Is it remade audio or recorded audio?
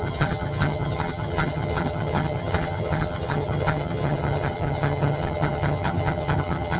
remade